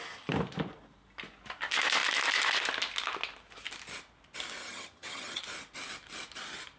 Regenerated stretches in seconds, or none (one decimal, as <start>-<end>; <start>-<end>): 4.6-5.4